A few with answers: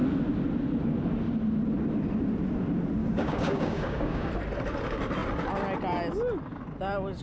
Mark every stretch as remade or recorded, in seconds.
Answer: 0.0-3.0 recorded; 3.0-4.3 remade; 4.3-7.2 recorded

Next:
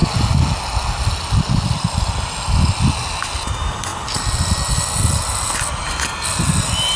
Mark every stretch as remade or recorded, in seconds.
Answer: 0.0-7.0 recorded

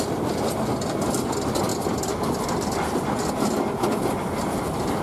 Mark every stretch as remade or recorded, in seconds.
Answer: 0.0-1.7 recorded; 1.7-3.3 remade; 3.3-5.0 recorded

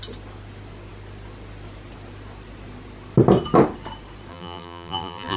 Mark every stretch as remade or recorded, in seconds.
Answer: 0.0-4.3 recorded; 4.3-5.4 remade

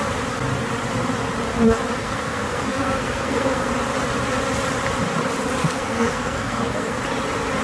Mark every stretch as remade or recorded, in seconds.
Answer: 0.0-2.0 recorded; 2.0-3.7 remade; 3.7-5.6 recorded; 5.6-7.0 remade; 7.0-7.6 recorded

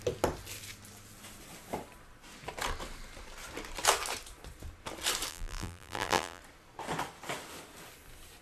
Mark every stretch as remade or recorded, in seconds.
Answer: 0.0-5.3 recorded; 5.3-6.4 remade; 6.4-8.4 recorded